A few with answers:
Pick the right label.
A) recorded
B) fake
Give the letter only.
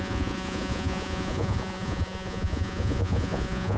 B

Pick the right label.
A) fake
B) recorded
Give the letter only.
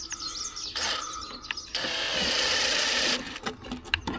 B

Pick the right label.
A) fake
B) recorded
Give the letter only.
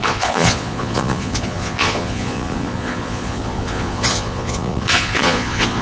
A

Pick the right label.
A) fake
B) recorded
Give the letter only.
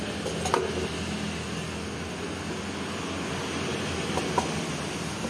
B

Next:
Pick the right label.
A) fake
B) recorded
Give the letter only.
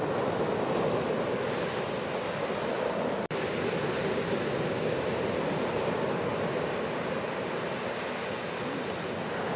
B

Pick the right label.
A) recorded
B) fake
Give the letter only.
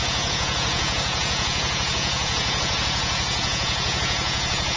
B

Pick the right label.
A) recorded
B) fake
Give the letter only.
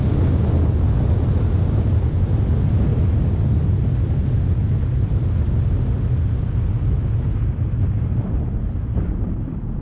A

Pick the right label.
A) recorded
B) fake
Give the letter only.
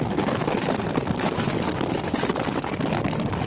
A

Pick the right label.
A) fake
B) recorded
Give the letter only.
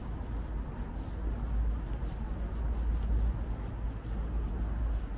B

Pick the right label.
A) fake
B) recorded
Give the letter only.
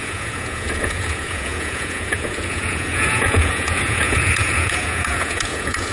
A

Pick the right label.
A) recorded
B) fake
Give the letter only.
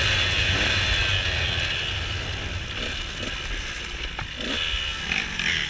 A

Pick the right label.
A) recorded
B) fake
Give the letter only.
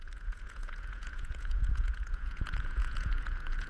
B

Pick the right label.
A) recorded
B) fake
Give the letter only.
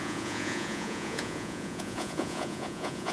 B